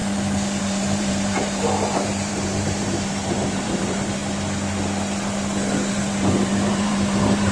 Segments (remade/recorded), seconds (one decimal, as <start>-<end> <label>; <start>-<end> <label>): 0.0-0.6 recorded; 0.6-4.2 remade; 4.2-5.9 recorded; 5.9-7.5 remade